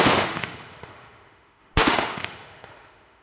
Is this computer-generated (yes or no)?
yes